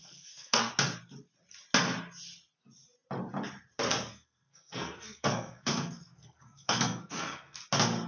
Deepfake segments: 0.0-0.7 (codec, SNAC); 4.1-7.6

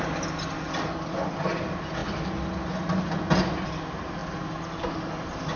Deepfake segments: none

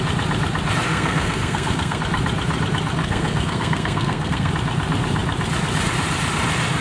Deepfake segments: 0.9-2.0 (codec, SNAC); 3.0-4.5

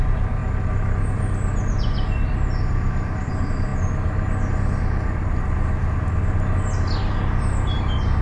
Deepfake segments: none

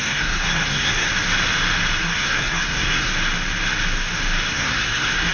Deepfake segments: 0.0-1.1 (codec, SNAC); 2.0-3.1; 4.5-5.3

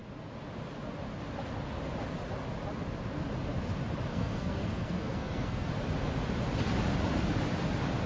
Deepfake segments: 4.1-5.7 (codec, SNAC)